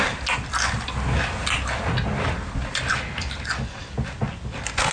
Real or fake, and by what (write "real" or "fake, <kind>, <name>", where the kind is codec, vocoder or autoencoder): real